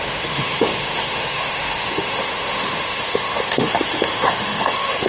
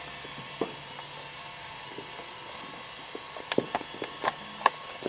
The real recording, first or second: second